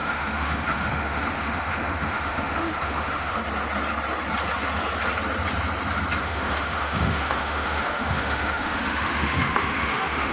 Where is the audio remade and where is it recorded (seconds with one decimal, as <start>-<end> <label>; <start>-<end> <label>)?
0.0-3.4 remade; 3.4-6.2 recorded; 6.2-10.3 remade